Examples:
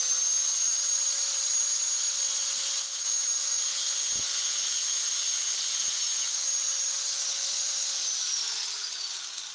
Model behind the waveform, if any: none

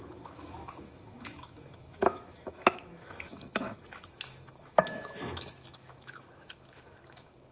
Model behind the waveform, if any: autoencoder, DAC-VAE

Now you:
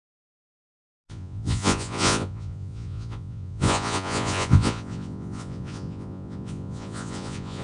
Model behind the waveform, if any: vocoder, Vocos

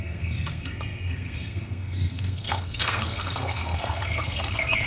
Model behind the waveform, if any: codec, SNAC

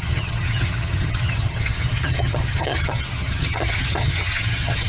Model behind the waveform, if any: vocoder, HiFi-GAN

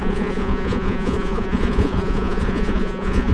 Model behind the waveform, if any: vocoder, Vocos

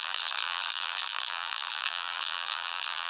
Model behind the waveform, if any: vocoder, BigVGAN v2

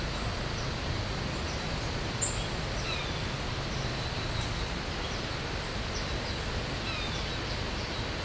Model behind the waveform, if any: none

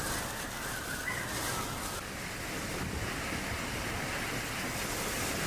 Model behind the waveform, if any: none